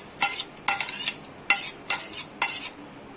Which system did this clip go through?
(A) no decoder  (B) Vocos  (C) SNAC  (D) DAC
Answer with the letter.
A